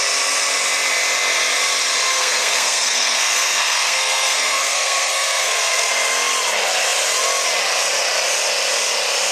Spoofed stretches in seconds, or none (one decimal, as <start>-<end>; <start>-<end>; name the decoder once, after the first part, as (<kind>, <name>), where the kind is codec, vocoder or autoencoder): 2.1-5.9 (codec, SNAC)